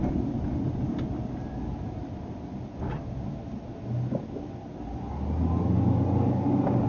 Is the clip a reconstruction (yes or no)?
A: no